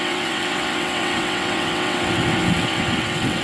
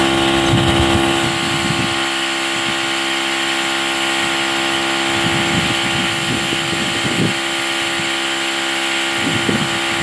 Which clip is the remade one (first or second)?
first